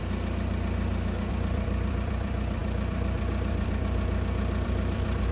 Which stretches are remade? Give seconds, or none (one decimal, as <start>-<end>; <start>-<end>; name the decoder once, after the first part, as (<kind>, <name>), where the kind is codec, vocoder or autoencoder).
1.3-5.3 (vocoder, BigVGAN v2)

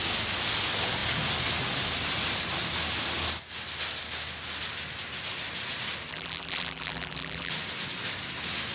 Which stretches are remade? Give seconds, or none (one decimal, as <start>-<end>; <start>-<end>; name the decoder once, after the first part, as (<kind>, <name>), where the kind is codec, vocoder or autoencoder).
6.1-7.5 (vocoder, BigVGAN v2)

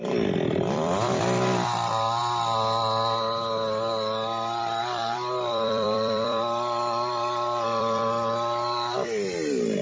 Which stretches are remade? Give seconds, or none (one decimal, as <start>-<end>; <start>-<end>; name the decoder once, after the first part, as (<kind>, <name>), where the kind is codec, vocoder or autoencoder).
0.0-2.2 (vocoder, BigVGAN v2); 4.8-9.8

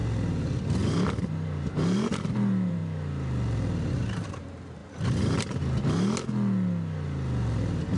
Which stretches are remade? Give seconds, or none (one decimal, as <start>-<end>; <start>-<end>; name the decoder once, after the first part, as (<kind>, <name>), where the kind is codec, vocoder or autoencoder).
1.3-2.8 (vocoder, BigVGAN v2); 3.9-4.8

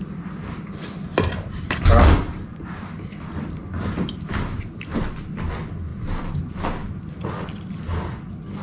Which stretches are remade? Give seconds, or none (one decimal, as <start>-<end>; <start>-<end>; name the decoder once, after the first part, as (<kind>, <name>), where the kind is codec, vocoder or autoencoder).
1.1-2.9 (vocoder, BigVGAN v2); 3.6-5.0; 5.9-6.4

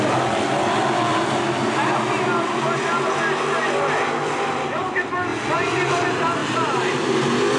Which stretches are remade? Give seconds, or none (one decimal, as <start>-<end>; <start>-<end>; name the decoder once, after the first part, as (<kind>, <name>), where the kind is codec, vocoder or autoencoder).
none

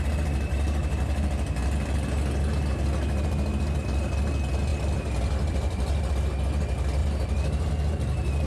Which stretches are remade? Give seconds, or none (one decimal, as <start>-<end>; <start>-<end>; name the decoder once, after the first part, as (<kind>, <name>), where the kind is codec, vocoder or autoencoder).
4.7-6.1 (vocoder, BigVGAN v2); 7.0-7.7

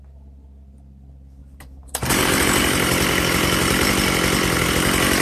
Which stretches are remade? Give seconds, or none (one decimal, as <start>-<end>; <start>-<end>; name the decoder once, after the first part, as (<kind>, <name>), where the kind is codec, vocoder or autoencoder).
1.4-3.9 (vocoder, BigVGAN v2)